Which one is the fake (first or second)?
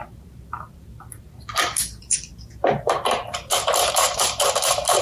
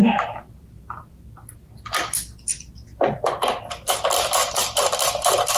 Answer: first